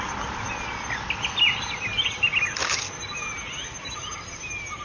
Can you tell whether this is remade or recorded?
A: recorded